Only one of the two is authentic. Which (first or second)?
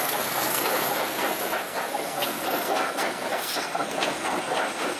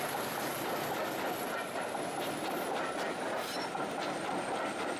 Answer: second